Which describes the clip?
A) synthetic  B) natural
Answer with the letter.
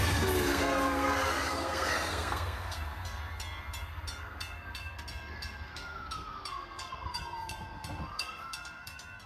A